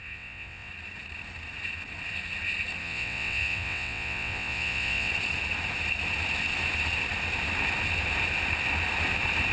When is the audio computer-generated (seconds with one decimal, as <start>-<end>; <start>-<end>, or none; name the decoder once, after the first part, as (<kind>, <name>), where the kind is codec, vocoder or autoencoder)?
0.0-0.7 (vocoder, WaveNeXt); 2.8-5.1